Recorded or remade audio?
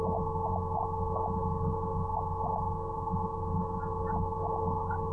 recorded